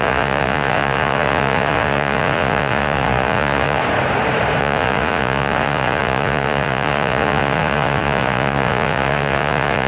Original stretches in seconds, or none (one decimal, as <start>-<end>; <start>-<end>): 3.8-4.6